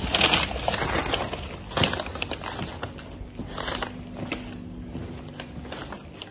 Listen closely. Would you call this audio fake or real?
real